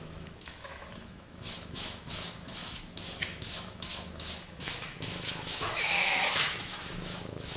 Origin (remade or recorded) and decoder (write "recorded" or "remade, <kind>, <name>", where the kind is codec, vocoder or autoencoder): remade, autoencoder, DAC-VAE